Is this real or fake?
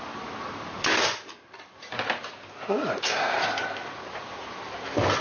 real